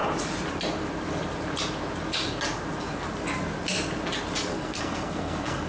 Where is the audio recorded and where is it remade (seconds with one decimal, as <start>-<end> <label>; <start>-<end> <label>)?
0.0-4.5 recorded; 4.5-5.7 remade